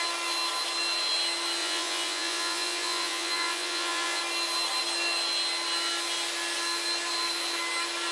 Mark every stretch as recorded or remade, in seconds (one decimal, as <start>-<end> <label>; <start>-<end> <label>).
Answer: 0.0-1.6 recorded; 1.6-4.2 remade; 4.2-8.1 recorded